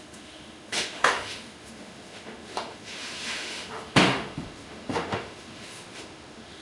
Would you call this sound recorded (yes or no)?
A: no